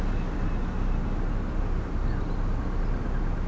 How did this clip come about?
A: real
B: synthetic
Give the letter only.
A